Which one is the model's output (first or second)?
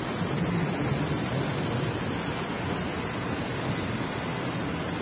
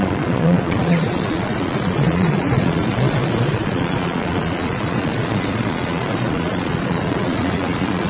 second